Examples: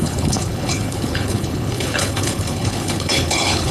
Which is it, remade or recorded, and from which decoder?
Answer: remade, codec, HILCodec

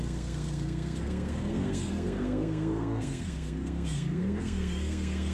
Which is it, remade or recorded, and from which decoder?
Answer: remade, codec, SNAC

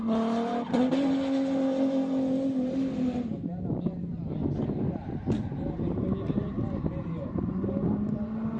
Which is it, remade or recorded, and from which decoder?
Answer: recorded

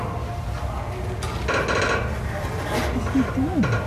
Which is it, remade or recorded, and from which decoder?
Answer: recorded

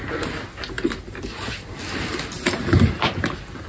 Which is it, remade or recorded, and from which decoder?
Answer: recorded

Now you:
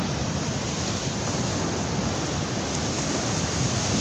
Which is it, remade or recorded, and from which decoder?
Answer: recorded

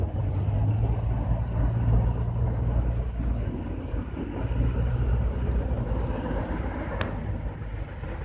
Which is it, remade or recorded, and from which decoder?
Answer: recorded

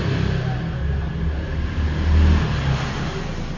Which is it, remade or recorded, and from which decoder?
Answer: recorded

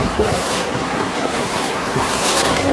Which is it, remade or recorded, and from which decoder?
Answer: remade, codec, SNAC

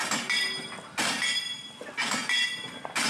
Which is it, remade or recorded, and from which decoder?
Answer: recorded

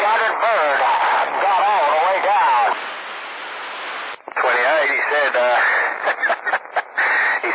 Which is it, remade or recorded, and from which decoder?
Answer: recorded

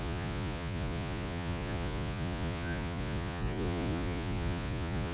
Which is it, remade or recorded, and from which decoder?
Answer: remade, vocoder, Vocos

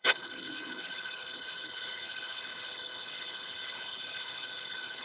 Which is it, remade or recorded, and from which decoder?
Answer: remade, codec, HILCodec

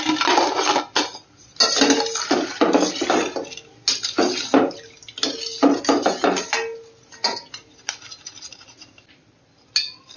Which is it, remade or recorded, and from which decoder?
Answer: recorded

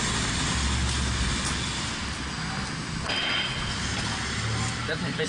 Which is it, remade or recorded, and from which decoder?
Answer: recorded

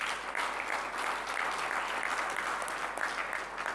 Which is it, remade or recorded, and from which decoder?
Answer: recorded